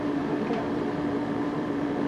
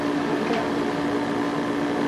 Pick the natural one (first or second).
second